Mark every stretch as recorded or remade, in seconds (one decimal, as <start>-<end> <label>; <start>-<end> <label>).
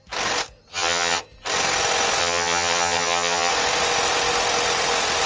0.0-0.7 recorded; 0.7-1.2 remade; 1.2-2.2 recorded; 2.2-3.5 remade; 3.5-5.3 recorded